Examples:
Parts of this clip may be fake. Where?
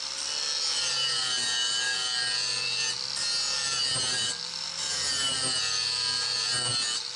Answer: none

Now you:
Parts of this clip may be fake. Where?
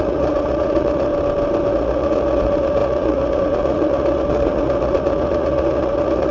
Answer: 0.0-1.1 (vocoder, Vocos); 1.7-6.3